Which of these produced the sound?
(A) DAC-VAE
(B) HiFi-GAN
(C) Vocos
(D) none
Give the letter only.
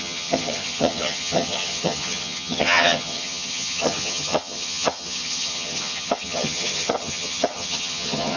B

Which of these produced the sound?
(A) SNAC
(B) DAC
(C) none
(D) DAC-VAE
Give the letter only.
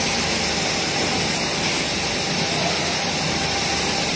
C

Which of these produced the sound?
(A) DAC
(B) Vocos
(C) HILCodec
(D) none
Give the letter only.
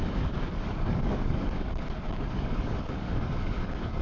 A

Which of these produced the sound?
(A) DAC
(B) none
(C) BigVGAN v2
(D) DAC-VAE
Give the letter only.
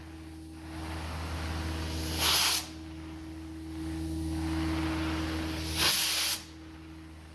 B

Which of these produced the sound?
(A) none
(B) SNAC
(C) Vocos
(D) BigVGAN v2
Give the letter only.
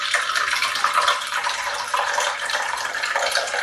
D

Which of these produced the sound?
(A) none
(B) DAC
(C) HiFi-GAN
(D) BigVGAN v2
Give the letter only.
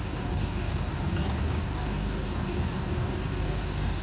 B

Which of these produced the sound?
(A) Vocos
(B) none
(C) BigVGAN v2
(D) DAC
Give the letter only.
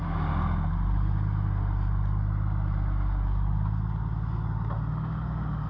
B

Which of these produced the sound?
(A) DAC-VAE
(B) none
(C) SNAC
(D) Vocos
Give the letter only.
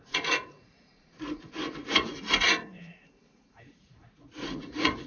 D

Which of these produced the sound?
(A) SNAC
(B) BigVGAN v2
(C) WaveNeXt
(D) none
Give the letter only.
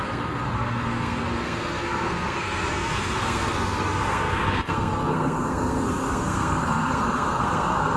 A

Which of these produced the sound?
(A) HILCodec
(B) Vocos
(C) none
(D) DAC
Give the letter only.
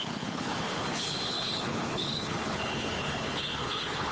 A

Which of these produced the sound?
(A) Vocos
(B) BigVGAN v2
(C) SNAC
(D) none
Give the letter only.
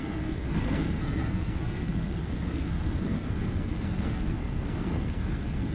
C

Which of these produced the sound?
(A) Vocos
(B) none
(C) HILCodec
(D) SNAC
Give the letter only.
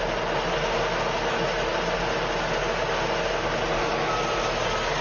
B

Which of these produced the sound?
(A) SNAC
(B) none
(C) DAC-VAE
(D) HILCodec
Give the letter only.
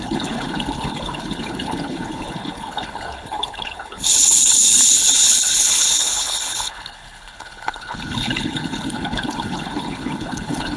D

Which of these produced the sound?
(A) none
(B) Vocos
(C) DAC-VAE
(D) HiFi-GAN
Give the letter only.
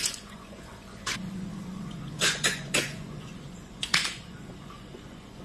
B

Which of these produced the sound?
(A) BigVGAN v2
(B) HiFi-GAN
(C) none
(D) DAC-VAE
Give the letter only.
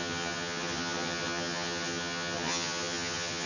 B